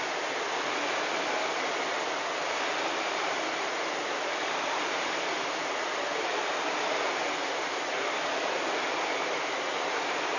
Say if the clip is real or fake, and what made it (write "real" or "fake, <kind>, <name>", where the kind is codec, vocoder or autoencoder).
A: real